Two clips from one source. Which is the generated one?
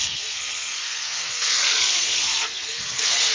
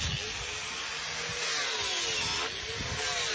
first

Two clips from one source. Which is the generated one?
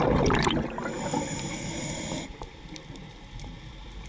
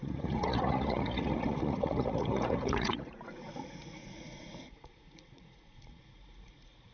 second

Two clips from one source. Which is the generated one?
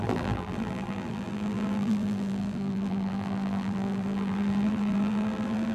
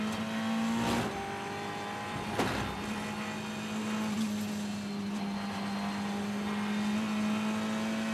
first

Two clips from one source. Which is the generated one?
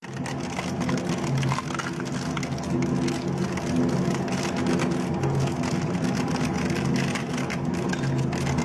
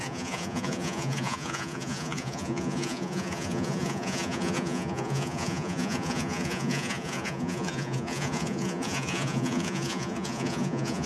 second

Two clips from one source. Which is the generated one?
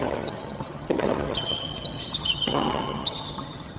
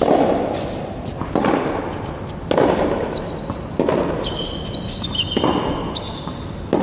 first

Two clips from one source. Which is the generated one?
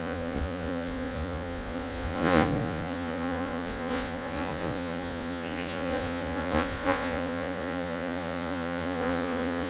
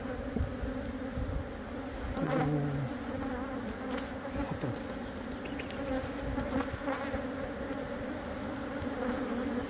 first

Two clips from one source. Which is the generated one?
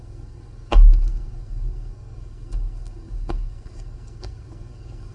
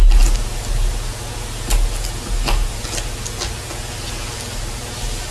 first